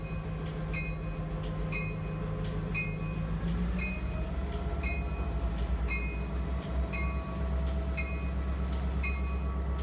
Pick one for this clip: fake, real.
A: real